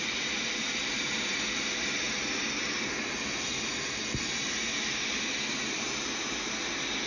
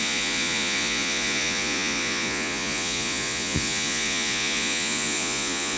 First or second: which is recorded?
first